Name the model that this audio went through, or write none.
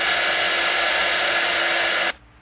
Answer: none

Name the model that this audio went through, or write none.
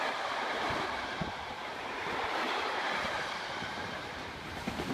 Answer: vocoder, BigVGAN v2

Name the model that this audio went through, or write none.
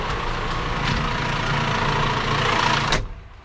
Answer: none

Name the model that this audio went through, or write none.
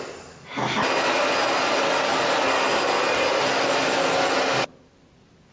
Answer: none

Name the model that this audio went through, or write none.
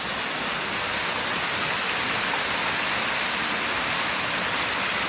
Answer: none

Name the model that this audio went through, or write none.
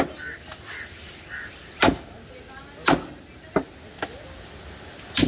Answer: none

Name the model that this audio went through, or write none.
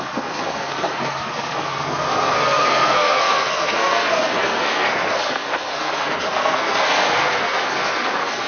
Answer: codec, SNAC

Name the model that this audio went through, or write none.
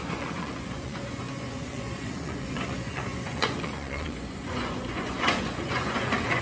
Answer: vocoder, Vocos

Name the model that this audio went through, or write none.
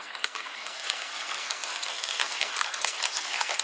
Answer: codec, SNAC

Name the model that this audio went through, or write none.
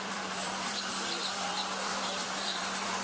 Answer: vocoder, BigVGAN v2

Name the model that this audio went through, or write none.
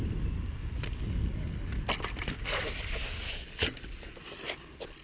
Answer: none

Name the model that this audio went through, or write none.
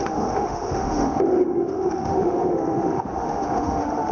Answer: autoencoder, DAC-VAE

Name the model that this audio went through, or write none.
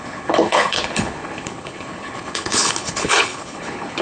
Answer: codec, HILCodec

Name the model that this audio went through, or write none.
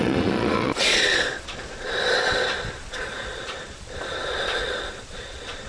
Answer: vocoder, Vocos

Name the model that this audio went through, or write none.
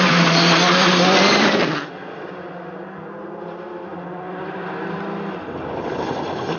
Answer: none